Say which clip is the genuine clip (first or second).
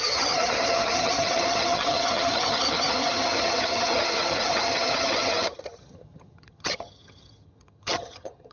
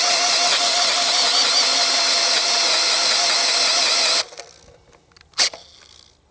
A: second